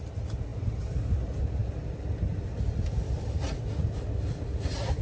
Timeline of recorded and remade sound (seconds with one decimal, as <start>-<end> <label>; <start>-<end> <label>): 0.0-5.0 recorded